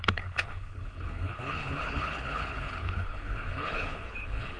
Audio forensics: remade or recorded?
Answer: remade